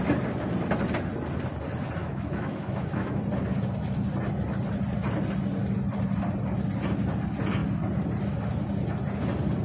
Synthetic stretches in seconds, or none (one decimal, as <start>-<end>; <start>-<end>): 2.0-3.2